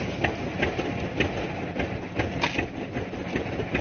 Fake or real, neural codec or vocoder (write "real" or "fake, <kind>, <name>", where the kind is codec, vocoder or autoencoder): real